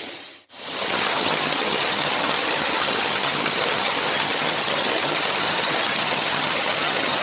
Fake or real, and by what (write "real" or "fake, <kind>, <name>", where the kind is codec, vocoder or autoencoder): fake, vocoder, HiFi-GAN